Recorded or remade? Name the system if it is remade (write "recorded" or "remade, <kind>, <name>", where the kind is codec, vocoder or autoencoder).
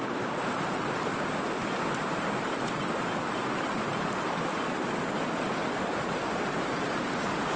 recorded